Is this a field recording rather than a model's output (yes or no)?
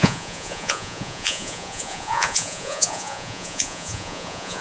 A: no